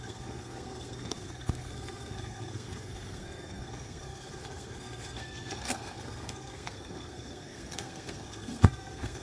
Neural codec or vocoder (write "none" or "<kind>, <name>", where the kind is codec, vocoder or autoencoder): codec, SNAC